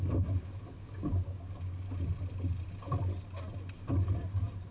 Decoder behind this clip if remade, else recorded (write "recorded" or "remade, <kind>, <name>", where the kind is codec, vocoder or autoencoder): recorded